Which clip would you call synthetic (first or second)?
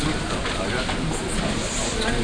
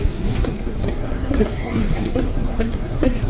second